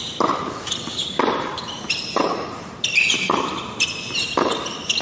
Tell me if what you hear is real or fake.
real